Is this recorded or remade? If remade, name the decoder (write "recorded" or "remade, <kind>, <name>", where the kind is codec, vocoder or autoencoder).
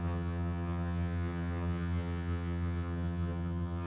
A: remade, vocoder, HiFi-GAN